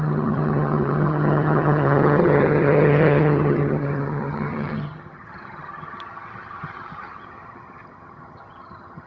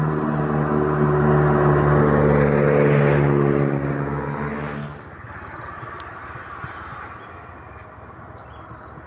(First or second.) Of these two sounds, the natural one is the second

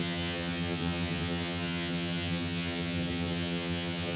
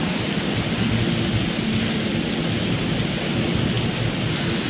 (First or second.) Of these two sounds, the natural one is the second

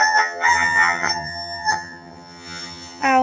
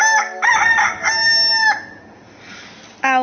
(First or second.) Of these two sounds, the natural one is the second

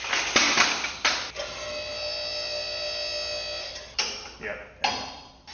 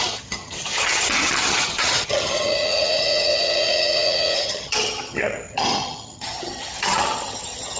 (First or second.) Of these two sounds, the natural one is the first